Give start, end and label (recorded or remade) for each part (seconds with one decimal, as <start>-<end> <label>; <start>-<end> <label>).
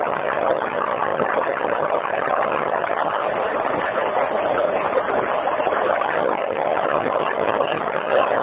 0.0-3.2 remade; 3.2-5.9 recorded; 5.9-8.4 remade